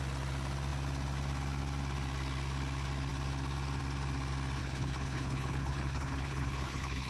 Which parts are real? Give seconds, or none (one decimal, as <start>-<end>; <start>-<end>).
0.0-4.6

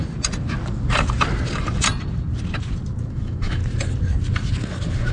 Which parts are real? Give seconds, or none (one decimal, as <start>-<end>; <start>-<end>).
0.0-3.1; 3.6-5.1

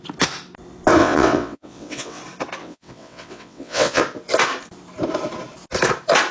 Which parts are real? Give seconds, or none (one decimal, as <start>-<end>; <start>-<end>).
0.0-1.0; 2.2-2.6; 4.0-6.3

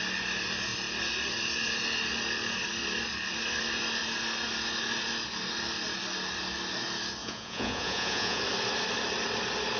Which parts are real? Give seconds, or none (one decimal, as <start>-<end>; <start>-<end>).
0.0-7.2; 8.4-9.8